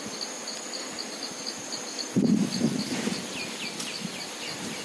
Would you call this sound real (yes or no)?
yes